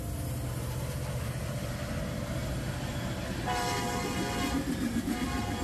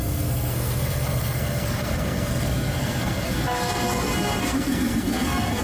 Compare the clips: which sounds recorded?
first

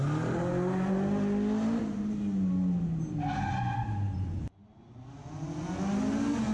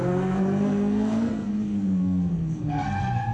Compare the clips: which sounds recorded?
first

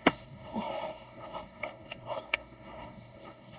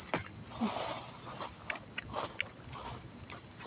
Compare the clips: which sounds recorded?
second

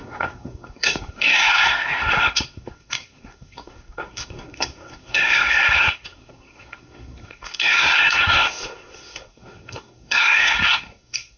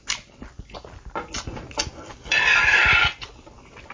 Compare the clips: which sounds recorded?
second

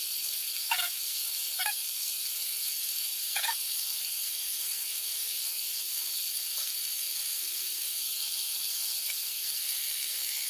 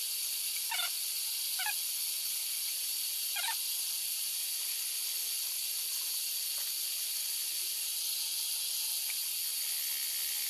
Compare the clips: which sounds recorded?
second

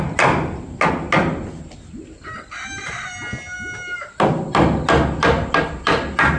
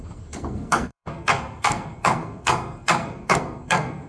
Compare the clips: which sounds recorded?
first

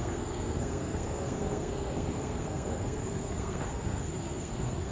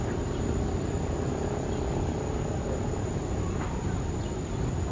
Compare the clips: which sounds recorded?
second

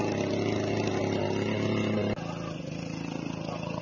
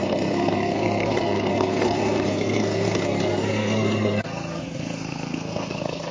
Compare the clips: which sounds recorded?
first